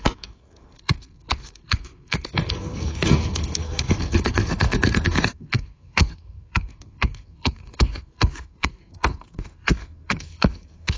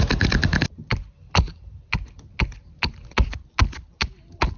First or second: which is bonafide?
second